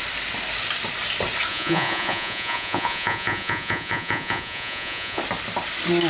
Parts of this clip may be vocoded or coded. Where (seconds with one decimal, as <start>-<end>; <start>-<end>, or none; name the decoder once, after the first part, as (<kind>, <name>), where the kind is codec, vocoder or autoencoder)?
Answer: 1.5-5.2 (vocoder, Vocos)